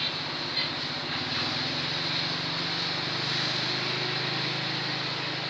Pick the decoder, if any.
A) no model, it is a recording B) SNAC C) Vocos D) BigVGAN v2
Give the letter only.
A